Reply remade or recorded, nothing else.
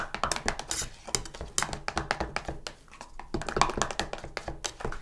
recorded